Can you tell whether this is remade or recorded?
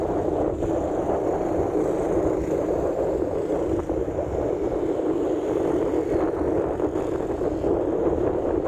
recorded